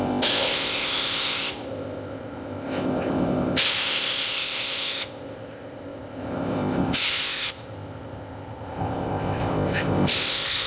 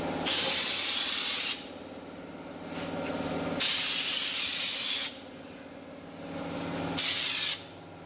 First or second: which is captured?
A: second